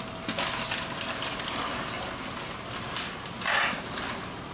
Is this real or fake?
real